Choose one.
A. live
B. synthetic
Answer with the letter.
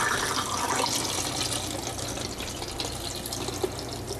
A